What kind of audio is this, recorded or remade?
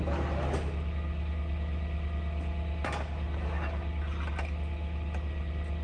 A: recorded